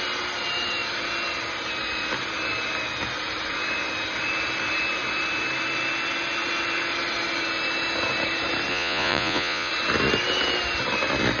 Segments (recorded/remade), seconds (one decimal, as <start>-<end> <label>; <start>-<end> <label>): 0.0-8.7 recorded; 8.7-9.7 remade; 9.7-11.4 recorded